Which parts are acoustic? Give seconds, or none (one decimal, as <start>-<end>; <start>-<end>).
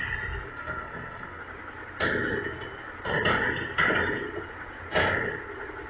0.0-0.5; 1.4-5.9